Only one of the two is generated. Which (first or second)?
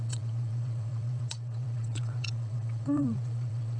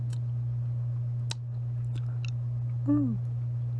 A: first